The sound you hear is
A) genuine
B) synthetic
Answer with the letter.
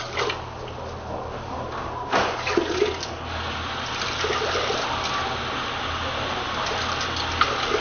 A